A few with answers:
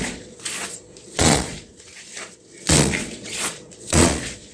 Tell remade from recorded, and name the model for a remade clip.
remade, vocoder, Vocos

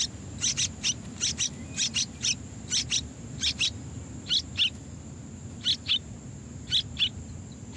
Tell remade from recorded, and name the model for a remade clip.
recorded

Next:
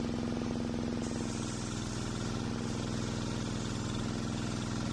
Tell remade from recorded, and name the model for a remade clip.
recorded